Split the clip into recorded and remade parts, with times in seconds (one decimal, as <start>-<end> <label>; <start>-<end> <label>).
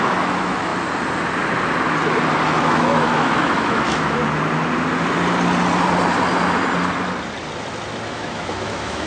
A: 0.0-0.7 remade; 0.7-2.6 recorded; 2.6-4.2 remade; 4.2-8.1 recorded; 8.1-9.1 remade